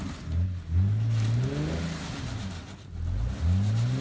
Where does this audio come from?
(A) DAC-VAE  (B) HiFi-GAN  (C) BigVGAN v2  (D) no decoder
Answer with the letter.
D